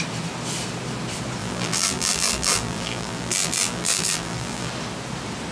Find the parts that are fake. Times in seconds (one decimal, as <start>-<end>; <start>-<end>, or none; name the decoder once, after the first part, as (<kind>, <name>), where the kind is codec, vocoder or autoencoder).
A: 1.4-4.7 (vocoder, BigVGAN v2)